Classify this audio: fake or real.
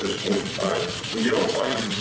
fake